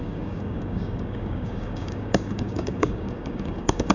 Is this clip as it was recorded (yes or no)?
no